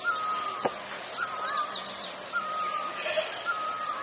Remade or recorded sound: remade